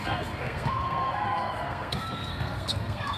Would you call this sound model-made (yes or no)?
yes